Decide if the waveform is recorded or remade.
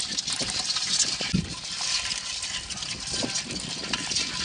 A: recorded